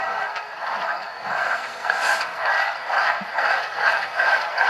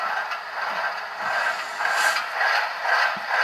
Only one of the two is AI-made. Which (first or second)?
first